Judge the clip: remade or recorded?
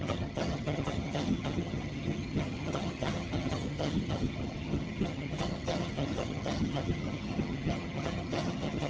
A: remade